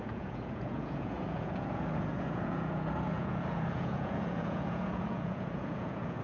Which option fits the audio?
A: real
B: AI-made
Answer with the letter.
B